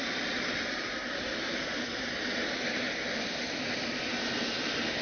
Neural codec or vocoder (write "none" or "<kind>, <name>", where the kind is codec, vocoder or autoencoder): none